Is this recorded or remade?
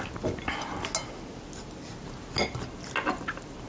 recorded